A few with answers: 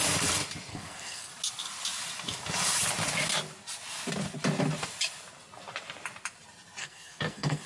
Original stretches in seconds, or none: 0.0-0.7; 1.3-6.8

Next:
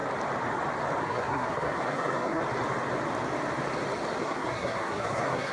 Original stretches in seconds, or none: 0.0-1.0; 2.4-4.2

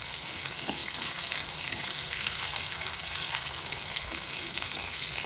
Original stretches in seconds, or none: none

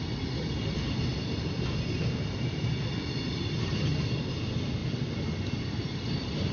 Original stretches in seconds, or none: 0.0-6.5

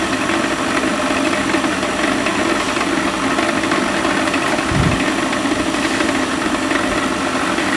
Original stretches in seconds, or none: 0.0-7.8

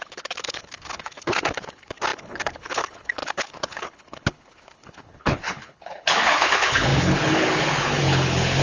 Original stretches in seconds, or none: none

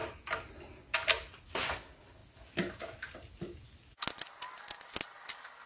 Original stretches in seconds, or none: 1.4-5.7